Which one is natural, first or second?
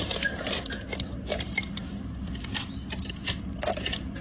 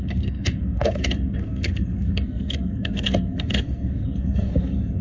first